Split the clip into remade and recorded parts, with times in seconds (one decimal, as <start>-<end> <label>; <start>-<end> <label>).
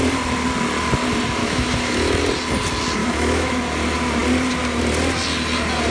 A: 0.0-1.4 recorded; 1.4-2.2 remade; 2.2-3.0 recorded; 3.0-3.6 remade; 3.6-5.9 recorded